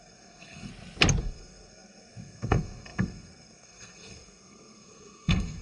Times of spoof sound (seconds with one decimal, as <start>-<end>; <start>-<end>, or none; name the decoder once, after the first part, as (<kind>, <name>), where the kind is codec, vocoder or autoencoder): 0.0-0.7 (codec, SNAC); 1.2-5.6